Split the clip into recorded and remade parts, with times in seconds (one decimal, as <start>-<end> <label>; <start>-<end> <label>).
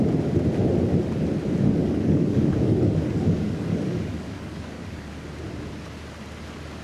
0.0-1.8 recorded; 1.8-5.1 remade; 5.1-6.8 recorded